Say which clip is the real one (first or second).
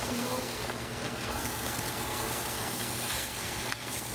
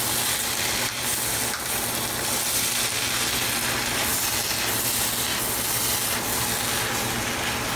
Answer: second